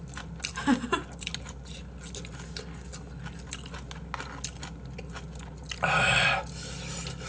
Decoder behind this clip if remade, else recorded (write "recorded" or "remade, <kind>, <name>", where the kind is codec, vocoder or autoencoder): recorded